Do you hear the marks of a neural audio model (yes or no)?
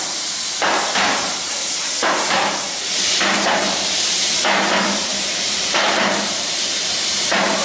yes